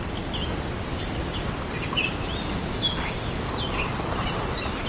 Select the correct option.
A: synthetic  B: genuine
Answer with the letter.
B